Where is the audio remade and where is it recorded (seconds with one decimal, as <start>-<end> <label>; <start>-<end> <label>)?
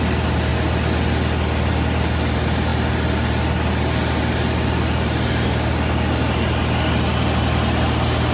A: 0.0-8.3 recorded